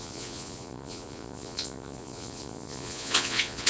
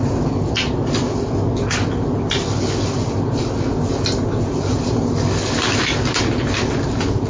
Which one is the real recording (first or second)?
second